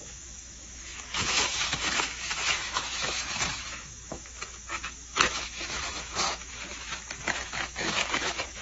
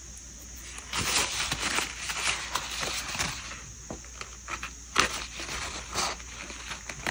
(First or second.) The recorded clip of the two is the second